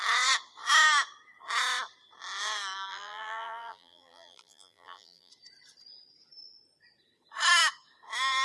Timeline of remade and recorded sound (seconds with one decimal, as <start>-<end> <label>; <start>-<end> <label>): 0.0-2.9 recorded; 2.9-5.3 remade; 5.3-8.4 recorded